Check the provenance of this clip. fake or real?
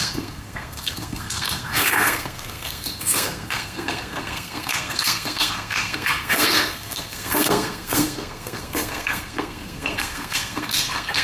fake